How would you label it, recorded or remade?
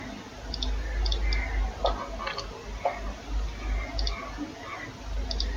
recorded